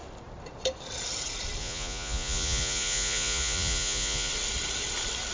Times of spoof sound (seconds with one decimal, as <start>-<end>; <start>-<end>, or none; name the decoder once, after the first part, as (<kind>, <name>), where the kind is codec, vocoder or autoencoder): 1.6-4.3 (vocoder, Vocos)